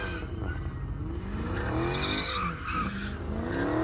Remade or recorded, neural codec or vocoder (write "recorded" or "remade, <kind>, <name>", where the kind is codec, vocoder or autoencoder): recorded